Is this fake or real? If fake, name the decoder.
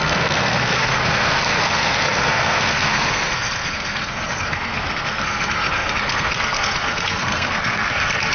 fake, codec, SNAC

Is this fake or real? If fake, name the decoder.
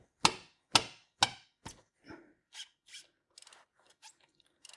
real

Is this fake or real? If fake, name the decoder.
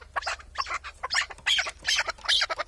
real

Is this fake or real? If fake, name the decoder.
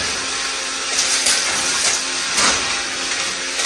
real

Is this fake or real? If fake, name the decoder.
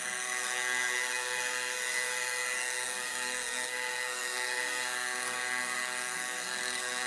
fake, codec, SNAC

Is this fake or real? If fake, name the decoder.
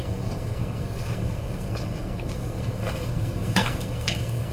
fake, codec, SNAC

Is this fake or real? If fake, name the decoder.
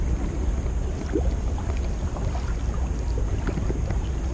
real